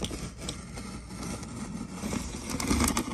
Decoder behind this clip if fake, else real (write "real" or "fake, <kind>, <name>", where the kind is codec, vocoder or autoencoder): real